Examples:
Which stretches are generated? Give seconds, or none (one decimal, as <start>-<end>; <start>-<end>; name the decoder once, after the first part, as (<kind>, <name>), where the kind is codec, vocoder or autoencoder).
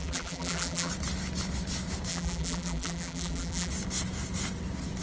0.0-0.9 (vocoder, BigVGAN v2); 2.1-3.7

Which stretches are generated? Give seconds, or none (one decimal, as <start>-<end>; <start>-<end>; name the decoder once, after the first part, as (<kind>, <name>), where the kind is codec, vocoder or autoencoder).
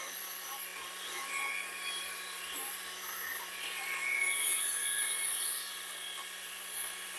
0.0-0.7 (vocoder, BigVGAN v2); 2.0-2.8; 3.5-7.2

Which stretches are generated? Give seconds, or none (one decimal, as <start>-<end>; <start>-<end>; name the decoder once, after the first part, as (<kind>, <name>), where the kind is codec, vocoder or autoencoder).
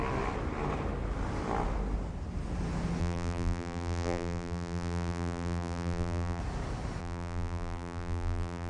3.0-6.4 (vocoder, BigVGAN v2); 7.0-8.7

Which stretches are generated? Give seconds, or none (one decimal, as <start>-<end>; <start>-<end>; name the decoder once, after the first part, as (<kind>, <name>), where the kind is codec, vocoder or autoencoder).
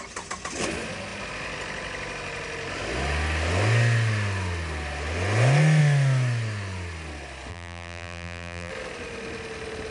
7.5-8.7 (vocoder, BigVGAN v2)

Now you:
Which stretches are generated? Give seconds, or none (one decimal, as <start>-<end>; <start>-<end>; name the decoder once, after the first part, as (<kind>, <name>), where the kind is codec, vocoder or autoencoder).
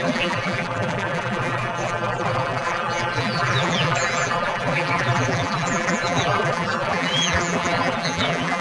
0.0-8.6 (vocoder, BigVGAN v2)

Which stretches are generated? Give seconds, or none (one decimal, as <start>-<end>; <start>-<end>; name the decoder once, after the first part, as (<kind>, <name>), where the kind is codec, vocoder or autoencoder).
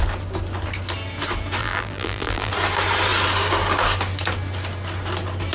1.6-2.5 (vocoder, BigVGAN v2)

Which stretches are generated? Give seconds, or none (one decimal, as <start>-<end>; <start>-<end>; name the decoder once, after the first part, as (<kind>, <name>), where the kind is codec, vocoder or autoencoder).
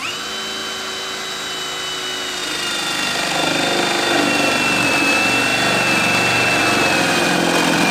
none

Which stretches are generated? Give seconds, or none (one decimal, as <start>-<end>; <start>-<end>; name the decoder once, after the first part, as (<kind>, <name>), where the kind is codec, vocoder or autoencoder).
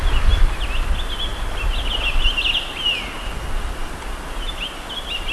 none